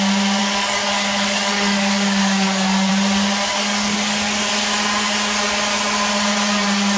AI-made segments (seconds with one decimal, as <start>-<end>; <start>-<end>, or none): 0.4-2.9; 3.5-4.5